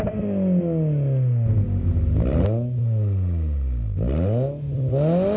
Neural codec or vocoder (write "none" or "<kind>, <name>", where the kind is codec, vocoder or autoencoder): none